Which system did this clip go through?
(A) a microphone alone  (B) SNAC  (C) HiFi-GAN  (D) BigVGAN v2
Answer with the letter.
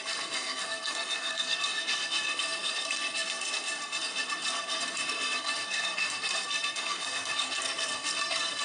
B